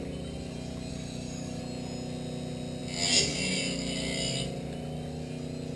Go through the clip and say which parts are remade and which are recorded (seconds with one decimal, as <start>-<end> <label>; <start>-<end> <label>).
0.0-0.9 recorded; 0.9-1.6 remade; 1.6-5.8 recorded